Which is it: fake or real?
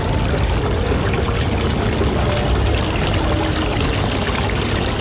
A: real